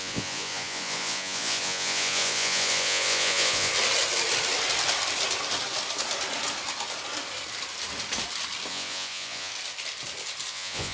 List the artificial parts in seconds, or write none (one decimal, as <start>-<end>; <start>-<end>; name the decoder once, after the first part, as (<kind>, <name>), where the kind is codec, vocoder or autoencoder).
0.0-3.7 (vocoder, Vocos); 8.7-9.5; 10.5-10.9